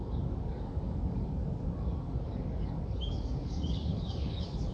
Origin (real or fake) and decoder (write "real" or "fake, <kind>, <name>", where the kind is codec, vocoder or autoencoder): fake, codec, DAC